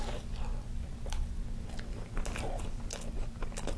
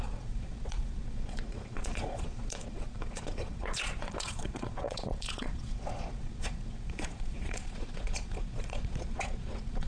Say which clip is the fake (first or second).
second